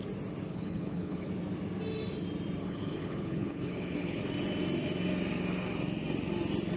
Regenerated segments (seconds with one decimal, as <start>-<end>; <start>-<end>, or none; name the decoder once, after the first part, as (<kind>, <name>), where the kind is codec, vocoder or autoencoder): 0.5-1.3 (codec, HILCodec); 2.6-4.2

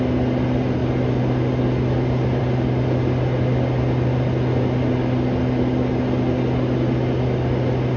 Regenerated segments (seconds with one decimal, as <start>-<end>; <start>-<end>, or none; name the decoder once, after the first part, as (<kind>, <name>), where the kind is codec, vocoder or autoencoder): none

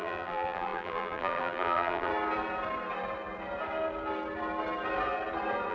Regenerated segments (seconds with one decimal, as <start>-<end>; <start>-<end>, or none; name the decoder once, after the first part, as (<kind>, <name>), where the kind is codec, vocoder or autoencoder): 0.0-2.1 (vocoder, BigVGAN v2)

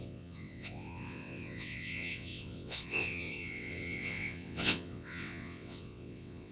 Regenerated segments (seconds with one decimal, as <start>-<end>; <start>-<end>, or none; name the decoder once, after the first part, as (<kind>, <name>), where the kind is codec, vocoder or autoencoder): 0.0-6.5 (vocoder, WaveNeXt)

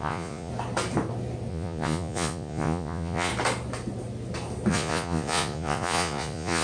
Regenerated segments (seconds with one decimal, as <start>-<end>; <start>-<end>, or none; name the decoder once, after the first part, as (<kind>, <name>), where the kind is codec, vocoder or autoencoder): 0.0-0.5 (vocoder, Vocos); 1.5-3.3; 4.7-6.6

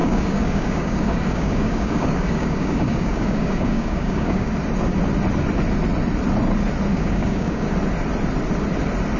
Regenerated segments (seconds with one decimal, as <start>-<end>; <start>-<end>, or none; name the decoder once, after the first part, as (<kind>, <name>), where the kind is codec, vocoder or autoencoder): 0.0-4.5 (codec, DAC); 6.9-7.7

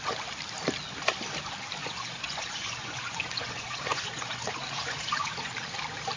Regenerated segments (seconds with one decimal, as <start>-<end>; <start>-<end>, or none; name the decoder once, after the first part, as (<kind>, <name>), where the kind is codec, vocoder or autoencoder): 1.8-5.5 (vocoder, Vocos)

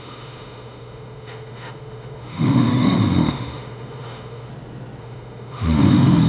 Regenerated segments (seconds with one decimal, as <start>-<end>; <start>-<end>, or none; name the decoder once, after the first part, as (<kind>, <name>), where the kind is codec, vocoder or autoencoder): 0.0-4.5 (autoencoder, DAC-VAE); 5.0-6.3